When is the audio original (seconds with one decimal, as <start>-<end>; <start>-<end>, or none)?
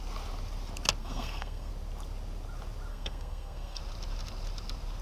0.0-1.0; 1.7-2.9; 3.8-5.0